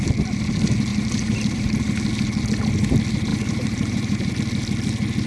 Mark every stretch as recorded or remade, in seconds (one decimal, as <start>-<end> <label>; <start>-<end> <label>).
0.0-0.9 recorded; 0.9-1.6 remade; 1.6-3.3 recorded; 3.3-4.3 remade; 4.3-5.3 recorded